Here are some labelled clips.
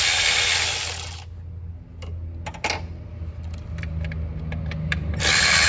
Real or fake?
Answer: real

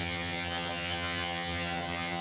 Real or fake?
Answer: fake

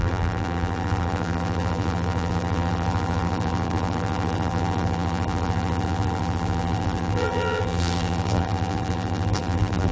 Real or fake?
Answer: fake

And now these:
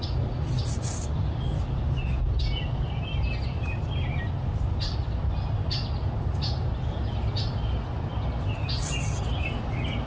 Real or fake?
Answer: real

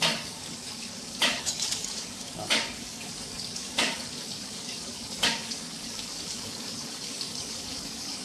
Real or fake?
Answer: fake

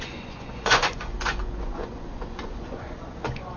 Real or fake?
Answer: fake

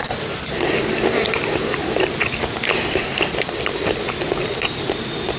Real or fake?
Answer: real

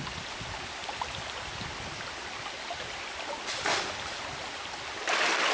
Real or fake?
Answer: real